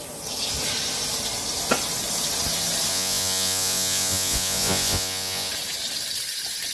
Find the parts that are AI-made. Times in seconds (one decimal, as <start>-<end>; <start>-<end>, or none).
2.9-5.5